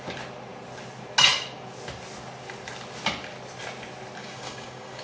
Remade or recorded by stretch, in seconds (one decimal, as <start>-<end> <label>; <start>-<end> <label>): 0.0-4.2 recorded; 4.2-5.0 remade